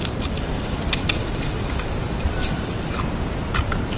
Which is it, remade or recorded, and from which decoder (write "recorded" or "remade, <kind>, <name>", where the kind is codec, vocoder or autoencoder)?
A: remade, vocoder, BigVGAN v2